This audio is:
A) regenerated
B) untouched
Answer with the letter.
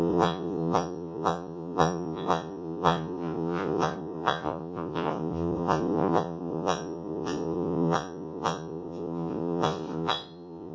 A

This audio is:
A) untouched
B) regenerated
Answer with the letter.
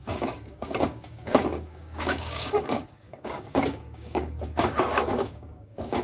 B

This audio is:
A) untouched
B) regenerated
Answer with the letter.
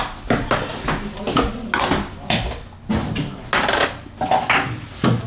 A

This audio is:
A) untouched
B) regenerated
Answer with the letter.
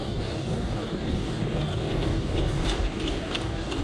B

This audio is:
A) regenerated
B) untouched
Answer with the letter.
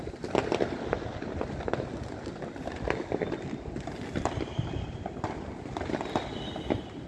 B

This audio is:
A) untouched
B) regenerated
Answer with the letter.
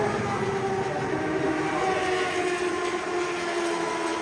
A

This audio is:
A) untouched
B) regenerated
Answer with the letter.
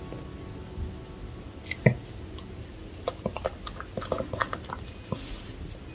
A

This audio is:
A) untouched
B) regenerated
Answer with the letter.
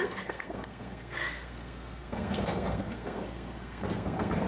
B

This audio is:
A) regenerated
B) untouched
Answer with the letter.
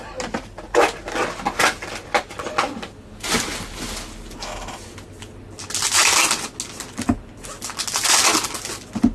B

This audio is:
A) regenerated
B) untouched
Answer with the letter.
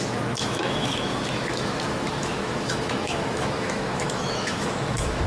A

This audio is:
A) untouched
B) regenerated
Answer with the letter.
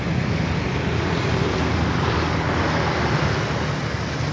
A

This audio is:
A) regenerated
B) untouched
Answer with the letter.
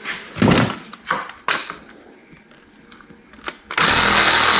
B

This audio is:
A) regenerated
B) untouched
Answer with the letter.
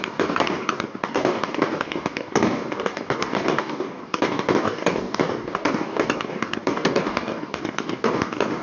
A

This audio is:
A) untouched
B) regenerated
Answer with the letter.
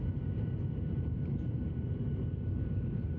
B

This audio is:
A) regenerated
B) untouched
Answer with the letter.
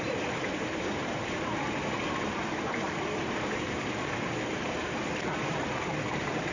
A